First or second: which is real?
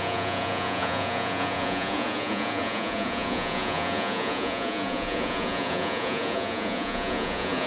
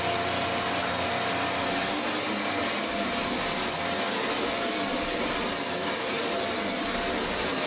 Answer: second